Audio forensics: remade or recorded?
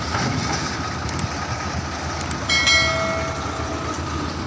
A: recorded